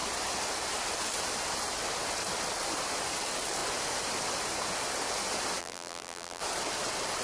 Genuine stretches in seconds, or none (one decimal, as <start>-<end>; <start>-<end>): 0.0-5.6; 6.4-7.2